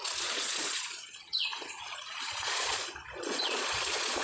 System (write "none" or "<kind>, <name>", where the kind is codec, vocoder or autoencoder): vocoder, Vocos